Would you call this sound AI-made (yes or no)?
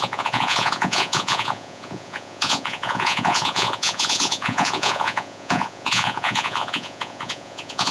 yes